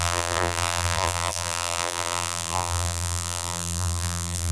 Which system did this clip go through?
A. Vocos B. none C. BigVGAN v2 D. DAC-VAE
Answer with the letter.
C